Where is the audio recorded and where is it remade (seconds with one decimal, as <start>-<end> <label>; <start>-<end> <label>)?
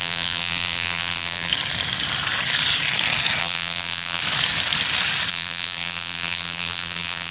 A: 0.0-1.5 remade; 1.5-3.4 recorded; 3.4-4.2 remade; 4.2-5.3 recorded; 5.3-7.3 remade